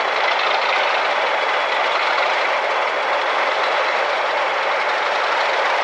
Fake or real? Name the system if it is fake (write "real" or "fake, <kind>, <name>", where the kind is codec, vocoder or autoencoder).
real